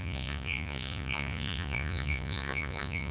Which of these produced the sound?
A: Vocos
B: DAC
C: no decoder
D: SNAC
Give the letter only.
A